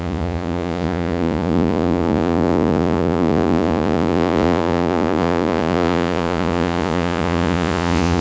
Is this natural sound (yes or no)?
no